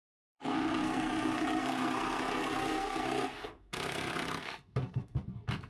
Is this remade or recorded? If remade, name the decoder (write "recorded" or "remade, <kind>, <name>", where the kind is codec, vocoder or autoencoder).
remade, codec, SNAC